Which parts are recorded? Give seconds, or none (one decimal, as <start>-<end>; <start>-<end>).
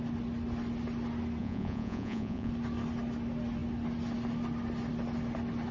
0.0-1.4; 2.5-5.7